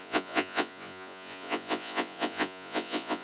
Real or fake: fake